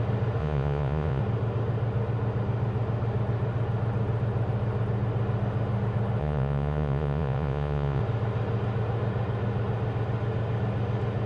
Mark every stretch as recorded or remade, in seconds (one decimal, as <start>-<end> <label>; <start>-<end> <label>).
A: 0.0-0.4 recorded; 0.4-1.2 remade; 1.2-6.2 recorded; 6.2-8.0 remade; 8.0-11.3 recorded